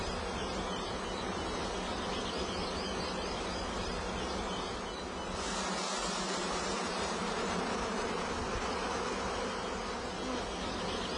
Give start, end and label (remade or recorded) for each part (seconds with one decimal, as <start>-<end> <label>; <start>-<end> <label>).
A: 0.0-5.2 recorded; 5.2-8.4 remade; 8.4-11.2 recorded

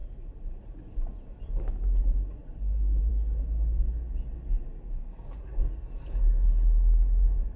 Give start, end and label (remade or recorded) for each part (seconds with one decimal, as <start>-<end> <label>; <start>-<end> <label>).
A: 0.0-0.6 remade; 0.6-2.4 recorded; 2.4-3.1 remade; 3.1-7.6 recorded

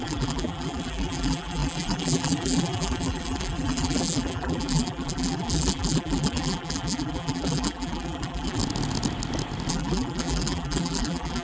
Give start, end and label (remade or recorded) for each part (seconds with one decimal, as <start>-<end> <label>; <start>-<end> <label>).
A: 0.0-8.6 remade; 8.6-9.7 recorded; 9.7-11.4 remade